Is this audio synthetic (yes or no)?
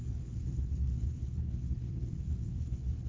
yes